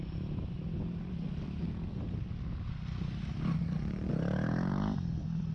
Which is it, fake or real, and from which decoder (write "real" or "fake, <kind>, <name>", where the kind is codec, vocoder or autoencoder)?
real